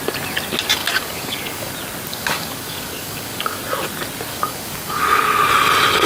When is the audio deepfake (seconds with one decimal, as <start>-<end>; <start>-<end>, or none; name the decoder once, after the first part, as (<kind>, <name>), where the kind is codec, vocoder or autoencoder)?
0.8-1.7 (codec, DAC); 2.1-3.6; 4.3-5.2